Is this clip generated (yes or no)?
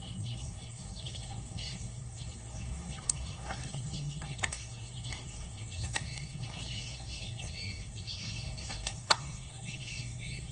yes